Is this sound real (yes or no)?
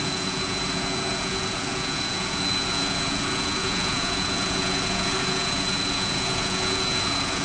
no